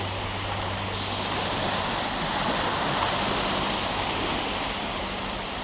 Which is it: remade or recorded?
recorded